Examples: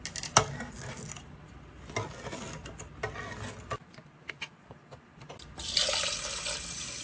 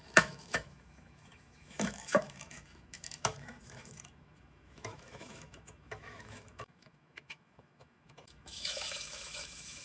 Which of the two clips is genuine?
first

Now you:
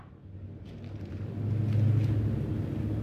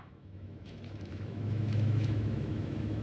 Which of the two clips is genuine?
first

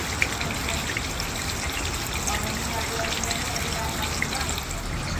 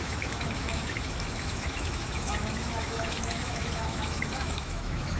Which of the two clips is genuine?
first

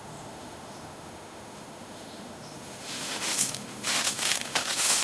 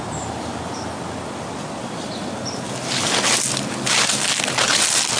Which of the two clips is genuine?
second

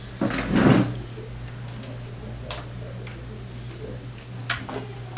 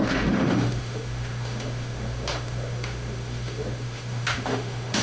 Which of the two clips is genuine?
first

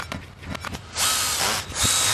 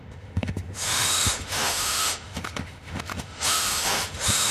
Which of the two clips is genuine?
first